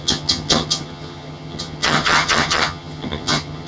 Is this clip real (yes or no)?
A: no